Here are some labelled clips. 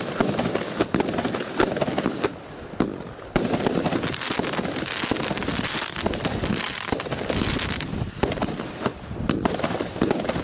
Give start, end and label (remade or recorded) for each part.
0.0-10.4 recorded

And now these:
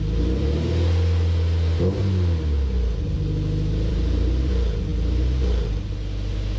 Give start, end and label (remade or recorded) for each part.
0.0-3.9 recorded; 3.9-4.4 remade; 4.4-6.6 recorded

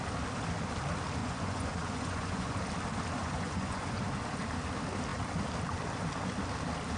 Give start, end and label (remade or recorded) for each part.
0.0-1.2 recorded; 1.2-2.6 remade; 2.6-3.2 recorded; 3.2-4.0 remade; 4.0-7.0 recorded

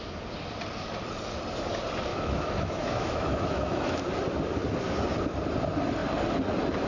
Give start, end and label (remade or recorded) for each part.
0.0-2.1 recorded; 2.1-4.0 remade; 4.0-6.9 recorded

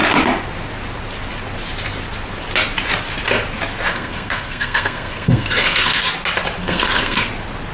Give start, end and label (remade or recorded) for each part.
0.0-3.9 recorded; 3.9-6.0 remade; 6.0-6.6 recorded; 6.6-7.3 remade; 7.3-7.7 recorded

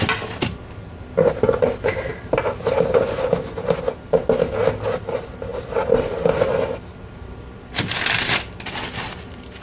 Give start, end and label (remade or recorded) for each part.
0.0-5.5 recorded; 5.5-7.8 remade; 7.8-9.6 recorded